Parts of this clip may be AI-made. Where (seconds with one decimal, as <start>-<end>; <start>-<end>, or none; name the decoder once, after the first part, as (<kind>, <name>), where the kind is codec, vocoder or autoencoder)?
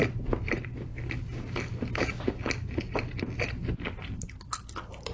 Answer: none